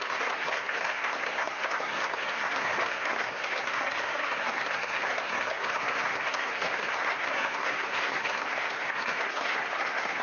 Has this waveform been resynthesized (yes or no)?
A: yes